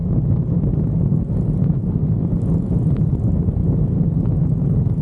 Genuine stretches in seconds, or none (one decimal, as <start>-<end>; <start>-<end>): 0.0-5.0